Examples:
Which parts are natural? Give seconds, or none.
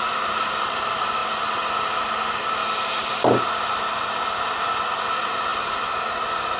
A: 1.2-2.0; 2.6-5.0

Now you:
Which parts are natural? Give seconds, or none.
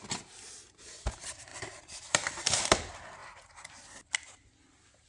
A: 0.0-1.5; 2.6-5.1